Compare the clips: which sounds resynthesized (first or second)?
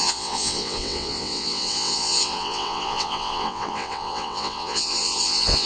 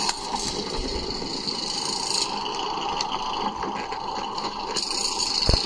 first